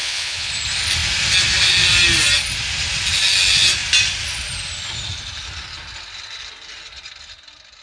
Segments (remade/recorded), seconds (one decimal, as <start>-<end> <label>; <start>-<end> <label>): 0.0-0.5 remade; 0.5-7.8 recorded